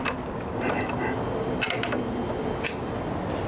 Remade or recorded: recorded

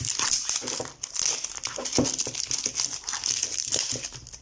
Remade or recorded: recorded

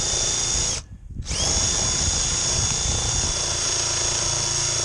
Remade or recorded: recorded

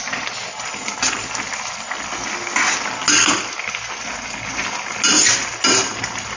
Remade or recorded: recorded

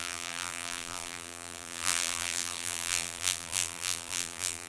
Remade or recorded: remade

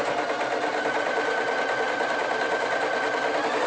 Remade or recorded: recorded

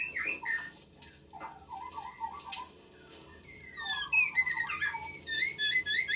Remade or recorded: recorded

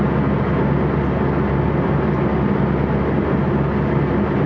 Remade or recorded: recorded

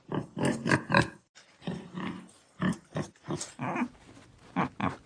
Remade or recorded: recorded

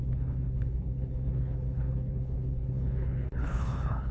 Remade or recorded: remade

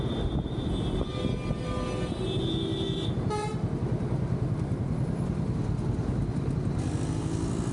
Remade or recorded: recorded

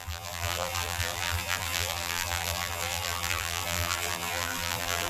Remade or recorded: remade